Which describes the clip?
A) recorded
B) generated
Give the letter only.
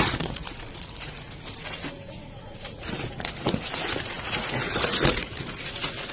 B